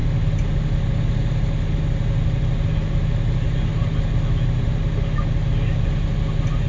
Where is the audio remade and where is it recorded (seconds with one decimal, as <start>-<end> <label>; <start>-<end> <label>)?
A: 0.0-6.7 recorded